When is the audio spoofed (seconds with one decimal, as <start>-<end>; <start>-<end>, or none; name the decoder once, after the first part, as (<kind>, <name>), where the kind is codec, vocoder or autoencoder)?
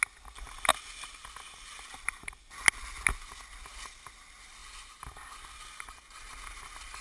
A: none